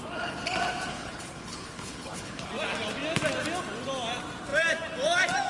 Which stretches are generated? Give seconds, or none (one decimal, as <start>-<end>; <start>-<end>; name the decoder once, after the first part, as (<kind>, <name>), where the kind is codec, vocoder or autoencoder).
0.9-2.5 (codec, HILCodec)